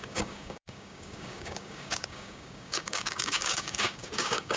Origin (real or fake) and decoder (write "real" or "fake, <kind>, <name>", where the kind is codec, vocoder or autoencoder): fake, codec, DAC